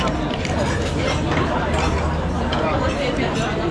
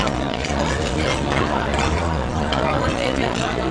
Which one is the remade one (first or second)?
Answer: second